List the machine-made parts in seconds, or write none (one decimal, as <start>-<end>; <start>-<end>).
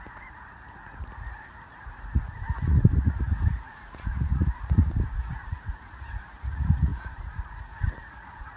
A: 0.0-8.6